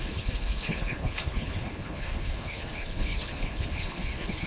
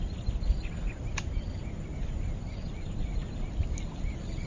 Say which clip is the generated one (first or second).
first